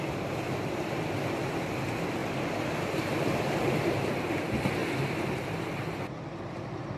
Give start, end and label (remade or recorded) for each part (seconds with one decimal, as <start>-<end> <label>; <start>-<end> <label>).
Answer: 0.0-2.2 recorded; 2.2-4.1 remade; 4.1-7.0 recorded